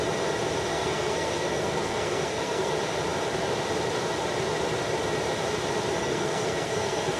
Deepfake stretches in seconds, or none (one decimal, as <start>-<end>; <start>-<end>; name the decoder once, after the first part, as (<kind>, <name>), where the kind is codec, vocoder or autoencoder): 0.7-2.7 (codec, SNAC); 6.0-7.2